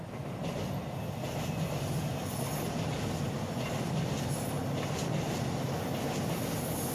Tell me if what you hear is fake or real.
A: real